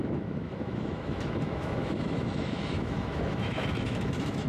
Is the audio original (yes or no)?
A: no